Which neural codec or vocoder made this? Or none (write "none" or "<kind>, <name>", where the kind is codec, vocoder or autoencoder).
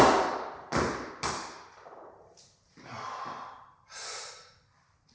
none